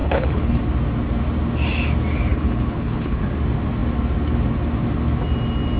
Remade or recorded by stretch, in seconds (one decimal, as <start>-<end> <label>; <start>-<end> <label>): 0.0-0.6 remade; 0.6-2.3 recorded; 2.3-3.2 remade; 3.2-5.8 recorded